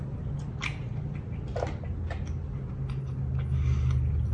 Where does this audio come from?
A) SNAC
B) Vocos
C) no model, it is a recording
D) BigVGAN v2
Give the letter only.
C